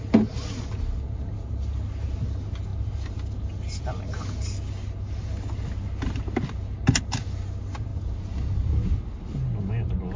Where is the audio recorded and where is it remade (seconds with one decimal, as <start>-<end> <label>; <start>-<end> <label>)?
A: 0.0-10.2 recorded